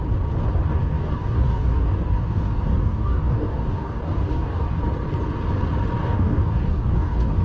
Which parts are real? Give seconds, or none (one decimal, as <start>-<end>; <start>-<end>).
0.0-0.7; 4.8-6.0